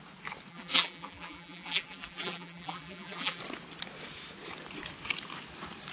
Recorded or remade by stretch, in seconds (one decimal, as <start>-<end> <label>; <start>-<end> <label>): 0.0-0.5 recorded; 0.5-3.4 remade; 3.4-5.9 recorded